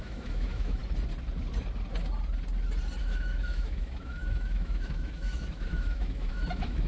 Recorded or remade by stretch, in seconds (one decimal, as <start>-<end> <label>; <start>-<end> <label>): 0.0-0.8 remade; 0.8-3.0 recorded; 3.0-6.9 remade